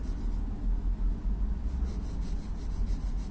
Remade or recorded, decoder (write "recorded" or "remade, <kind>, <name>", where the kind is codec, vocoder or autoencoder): recorded